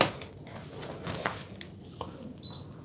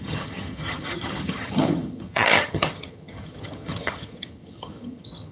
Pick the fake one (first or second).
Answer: second